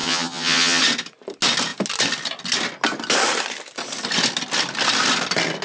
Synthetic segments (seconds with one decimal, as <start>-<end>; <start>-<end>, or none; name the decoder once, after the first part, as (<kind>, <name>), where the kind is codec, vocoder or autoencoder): 0.0-0.8 (vocoder, HiFi-GAN)